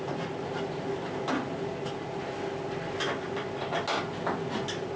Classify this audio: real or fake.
real